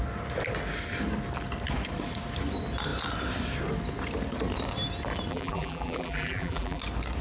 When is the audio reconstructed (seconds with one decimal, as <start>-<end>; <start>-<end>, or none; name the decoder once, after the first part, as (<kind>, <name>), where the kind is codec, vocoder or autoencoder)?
5.3-6.8 (vocoder, BigVGAN v2)